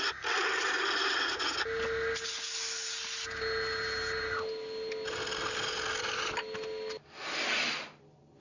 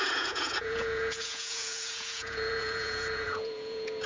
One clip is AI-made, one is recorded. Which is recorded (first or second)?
first